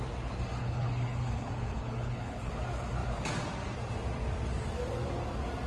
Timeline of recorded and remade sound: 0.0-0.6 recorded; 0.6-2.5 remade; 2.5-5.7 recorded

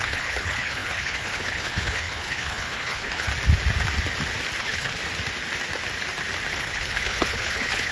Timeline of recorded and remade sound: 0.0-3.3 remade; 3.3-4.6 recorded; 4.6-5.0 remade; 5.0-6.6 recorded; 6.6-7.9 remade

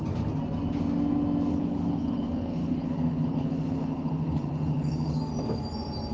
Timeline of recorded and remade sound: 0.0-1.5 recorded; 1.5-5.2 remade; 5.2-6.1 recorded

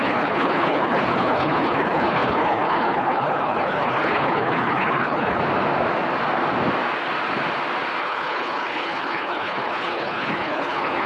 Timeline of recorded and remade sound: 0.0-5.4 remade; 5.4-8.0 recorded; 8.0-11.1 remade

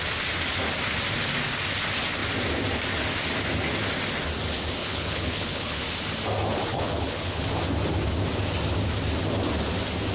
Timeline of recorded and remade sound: 0.0-4.8 recorded; 4.8-5.8 remade; 5.8-6.7 recorded; 6.7-7.5 remade; 7.5-10.1 recorded

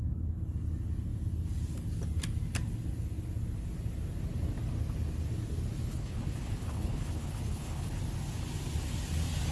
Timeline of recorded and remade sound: 0.0-5.9 recorded; 5.9-8.0 remade; 8.0-9.5 recorded

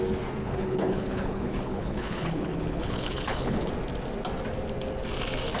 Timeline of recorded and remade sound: 0.0-0.4 recorded; 0.4-3.7 remade; 3.7-5.6 recorded